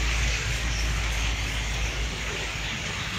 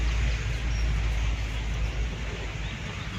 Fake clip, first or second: first